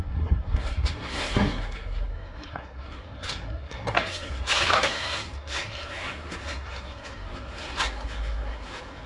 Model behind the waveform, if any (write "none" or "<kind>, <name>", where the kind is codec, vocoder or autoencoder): codec, SNAC